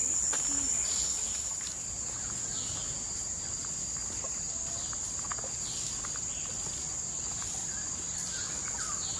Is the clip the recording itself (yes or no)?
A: yes